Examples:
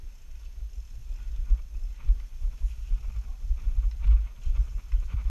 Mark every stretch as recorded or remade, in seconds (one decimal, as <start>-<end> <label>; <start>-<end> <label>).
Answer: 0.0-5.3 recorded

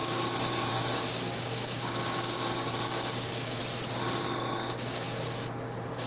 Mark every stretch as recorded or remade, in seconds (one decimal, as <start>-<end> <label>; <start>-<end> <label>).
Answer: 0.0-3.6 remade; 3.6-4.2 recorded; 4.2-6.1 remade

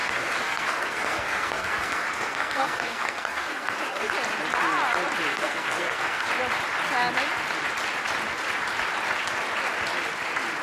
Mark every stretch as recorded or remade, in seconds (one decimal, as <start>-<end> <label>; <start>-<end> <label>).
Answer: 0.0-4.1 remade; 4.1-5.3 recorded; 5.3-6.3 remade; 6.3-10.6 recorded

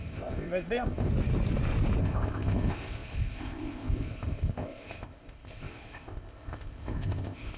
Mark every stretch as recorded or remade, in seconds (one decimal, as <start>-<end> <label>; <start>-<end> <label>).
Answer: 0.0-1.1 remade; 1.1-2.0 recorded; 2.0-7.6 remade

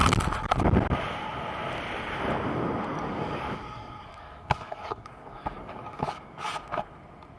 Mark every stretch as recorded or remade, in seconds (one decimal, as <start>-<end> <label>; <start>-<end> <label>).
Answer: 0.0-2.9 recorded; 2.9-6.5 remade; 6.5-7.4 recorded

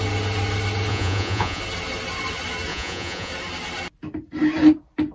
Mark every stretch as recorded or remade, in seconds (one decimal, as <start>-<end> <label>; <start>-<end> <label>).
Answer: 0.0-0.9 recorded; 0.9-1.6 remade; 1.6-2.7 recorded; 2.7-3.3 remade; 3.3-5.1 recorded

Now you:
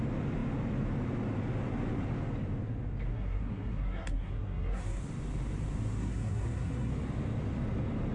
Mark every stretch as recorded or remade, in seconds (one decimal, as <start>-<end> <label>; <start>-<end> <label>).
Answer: 0.0-3.1 recorded; 3.1-5.0 remade; 5.0-6.0 recorded; 6.0-6.9 remade; 6.9-8.1 recorded

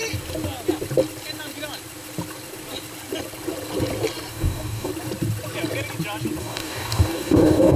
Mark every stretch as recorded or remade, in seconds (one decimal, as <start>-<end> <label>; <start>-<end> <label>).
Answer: 0.0-4.3 recorded; 4.3-4.9 remade; 4.9-6.4 recorded; 6.4-7.8 remade